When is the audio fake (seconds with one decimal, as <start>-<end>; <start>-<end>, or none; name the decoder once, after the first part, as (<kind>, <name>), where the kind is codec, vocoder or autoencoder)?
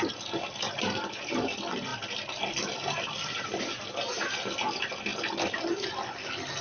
none